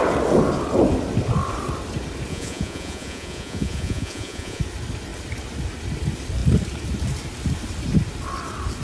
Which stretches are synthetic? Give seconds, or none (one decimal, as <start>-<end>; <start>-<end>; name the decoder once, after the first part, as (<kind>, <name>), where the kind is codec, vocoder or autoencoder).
2.3-4.6 (vocoder, Vocos)